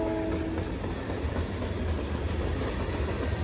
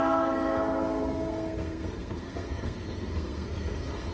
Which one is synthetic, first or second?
second